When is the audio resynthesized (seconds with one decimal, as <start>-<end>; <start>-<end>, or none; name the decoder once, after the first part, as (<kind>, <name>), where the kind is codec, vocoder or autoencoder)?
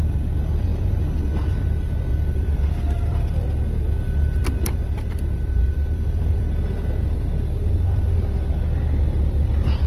2.1-7.1 (vocoder, BigVGAN v2)